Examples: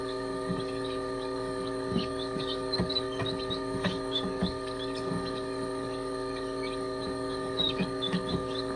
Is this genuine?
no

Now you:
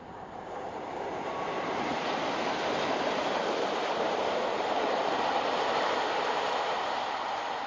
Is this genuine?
no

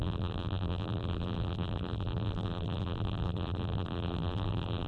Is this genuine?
no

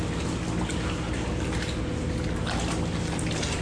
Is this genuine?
yes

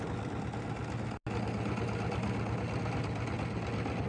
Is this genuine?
yes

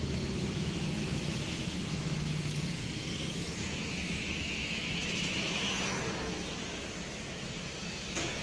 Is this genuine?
no